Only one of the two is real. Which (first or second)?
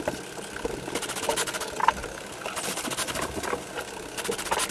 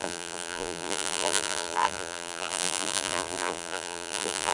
first